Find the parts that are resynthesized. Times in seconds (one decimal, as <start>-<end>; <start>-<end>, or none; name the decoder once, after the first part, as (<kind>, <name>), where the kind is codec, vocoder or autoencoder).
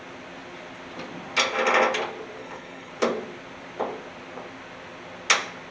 2.4-2.9 (codec, HILCodec)